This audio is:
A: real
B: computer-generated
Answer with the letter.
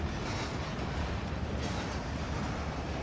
B